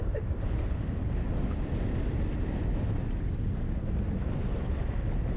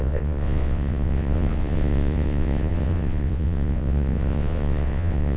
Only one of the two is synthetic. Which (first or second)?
second